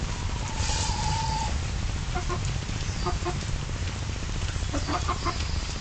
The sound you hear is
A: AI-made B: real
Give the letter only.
A